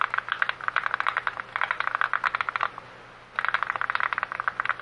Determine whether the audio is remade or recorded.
recorded